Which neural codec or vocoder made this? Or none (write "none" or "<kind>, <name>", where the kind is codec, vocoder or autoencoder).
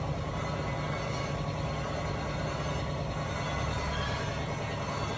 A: none